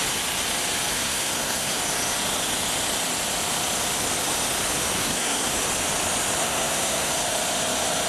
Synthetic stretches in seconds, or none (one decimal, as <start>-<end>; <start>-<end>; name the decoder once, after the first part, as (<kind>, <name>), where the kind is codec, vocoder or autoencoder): 0.9-1.8 (codec, SNAC); 5.0-5.5; 6.4-7.1